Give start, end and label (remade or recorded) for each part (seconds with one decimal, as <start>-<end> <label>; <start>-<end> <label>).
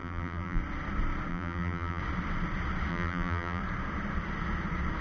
0.0-0.6 remade; 0.6-1.3 recorded; 1.3-2.0 remade; 2.0-2.9 recorded; 2.9-3.6 remade; 3.6-5.0 recorded